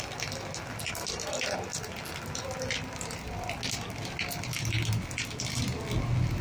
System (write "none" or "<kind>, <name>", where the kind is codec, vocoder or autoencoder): none